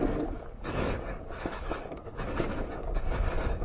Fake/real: fake